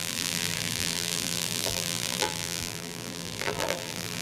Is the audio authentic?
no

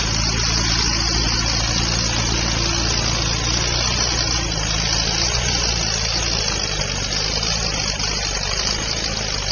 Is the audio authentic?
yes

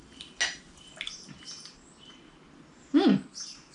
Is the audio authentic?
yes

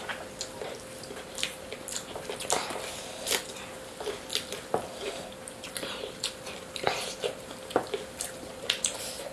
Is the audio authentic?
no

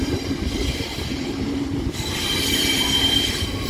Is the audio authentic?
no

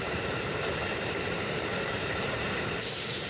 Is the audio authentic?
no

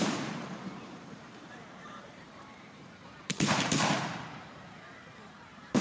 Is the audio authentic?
no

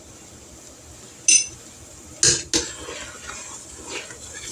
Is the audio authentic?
yes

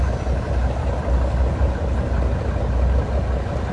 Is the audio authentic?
yes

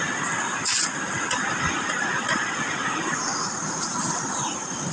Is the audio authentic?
no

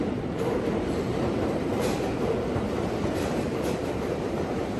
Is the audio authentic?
no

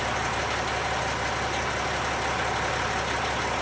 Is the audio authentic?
yes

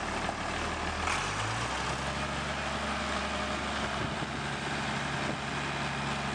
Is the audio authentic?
yes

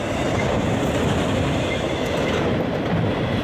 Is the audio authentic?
no